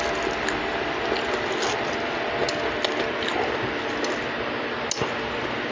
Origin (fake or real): real